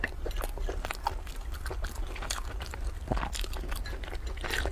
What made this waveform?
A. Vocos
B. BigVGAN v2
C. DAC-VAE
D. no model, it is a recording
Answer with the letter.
B